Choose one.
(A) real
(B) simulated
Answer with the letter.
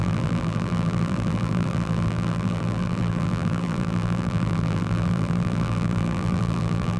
B